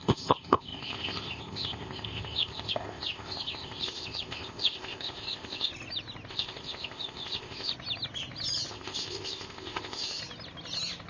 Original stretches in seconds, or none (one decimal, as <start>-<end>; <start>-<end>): 5.7-6.3; 7.7-8.7; 10.2-11.1